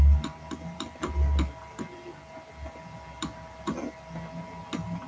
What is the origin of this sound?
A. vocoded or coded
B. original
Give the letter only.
B